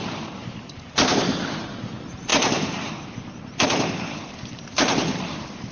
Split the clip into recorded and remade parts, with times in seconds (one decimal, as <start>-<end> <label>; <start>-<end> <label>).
0.0-5.7 remade